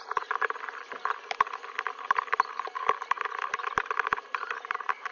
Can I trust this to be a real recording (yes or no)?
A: yes